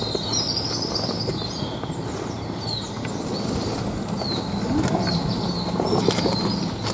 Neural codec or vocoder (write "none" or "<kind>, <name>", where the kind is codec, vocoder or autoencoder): none